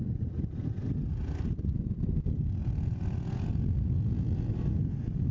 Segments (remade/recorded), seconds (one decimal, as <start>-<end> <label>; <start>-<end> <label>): 0.0-2.6 recorded; 2.6-3.3 remade; 3.3-5.3 recorded